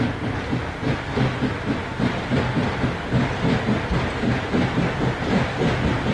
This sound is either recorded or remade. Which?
recorded